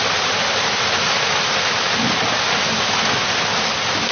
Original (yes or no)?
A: yes